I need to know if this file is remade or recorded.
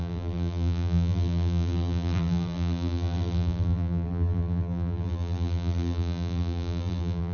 remade